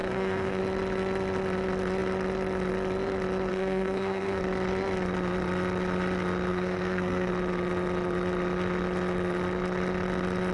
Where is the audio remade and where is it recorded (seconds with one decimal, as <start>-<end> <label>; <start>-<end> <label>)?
0.0-0.6 remade; 0.6-3.5 recorded; 3.5-4.4 remade; 4.4-6.5 recorded; 6.5-7.3 remade; 7.3-10.5 recorded